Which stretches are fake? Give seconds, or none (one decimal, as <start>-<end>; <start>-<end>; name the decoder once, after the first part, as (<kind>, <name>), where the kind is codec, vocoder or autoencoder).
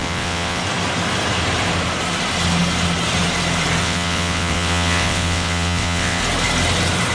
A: 0.0-0.6 (vocoder, WaveNeXt); 3.8-6.2